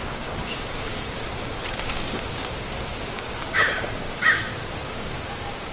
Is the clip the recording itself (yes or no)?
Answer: no